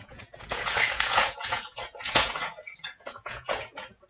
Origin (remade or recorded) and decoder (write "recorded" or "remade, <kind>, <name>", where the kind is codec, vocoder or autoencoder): remade, vocoder, Vocos